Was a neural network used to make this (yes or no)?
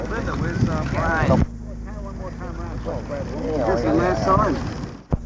no